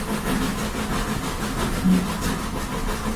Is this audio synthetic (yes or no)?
no